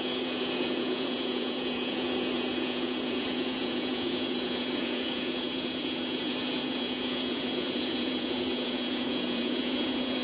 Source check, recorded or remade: remade